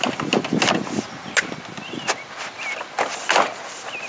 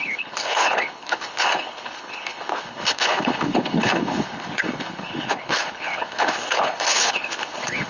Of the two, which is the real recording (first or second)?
first